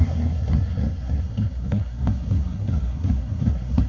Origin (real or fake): fake